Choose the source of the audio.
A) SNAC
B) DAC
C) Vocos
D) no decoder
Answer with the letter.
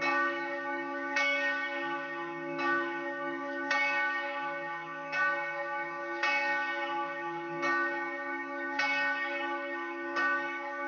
B